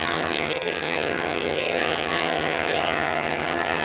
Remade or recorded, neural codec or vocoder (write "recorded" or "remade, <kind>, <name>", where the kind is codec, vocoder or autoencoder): remade, vocoder, HiFi-GAN